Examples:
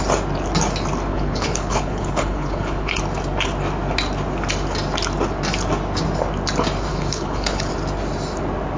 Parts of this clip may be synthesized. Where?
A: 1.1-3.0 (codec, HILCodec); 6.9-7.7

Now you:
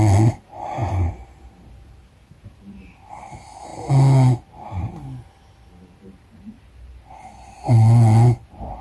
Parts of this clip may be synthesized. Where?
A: none

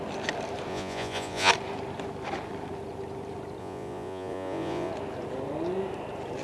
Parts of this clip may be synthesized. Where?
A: 0.7-1.5 (vocoder, Vocos); 3.6-4.9

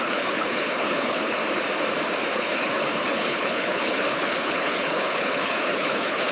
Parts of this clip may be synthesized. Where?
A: 0.0-1.4 (codec, HILCodec); 2.3-6.3

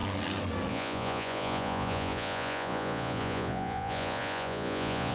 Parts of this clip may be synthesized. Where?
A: 0.7-5.1 (vocoder, Vocos)

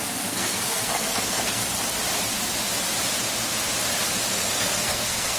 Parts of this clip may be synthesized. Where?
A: 0.0-1.6 (codec, SNAC); 4.3-5.4

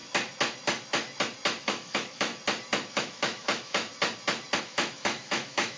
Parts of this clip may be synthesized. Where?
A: 1.6-2.3 (autoencoder, DAC-VAE); 2.9-3.9; 4.6-5.8